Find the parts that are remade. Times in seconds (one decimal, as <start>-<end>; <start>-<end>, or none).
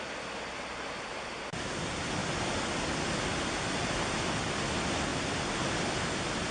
none